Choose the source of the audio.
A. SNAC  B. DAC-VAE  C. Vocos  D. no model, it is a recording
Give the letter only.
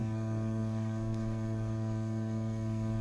A